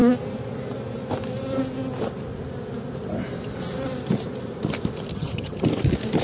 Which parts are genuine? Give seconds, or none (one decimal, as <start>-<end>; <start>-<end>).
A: 0.0-5.1; 5.6-6.2